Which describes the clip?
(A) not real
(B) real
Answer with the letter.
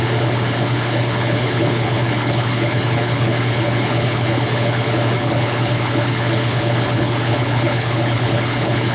A